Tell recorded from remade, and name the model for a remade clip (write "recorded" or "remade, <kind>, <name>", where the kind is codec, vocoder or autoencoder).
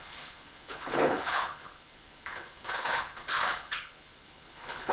remade, codec, HILCodec